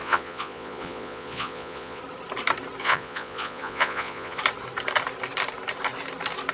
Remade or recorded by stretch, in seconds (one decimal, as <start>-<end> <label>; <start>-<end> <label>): 0.0-2.0 remade; 2.0-2.8 recorded; 2.8-4.4 remade; 4.4-6.5 recorded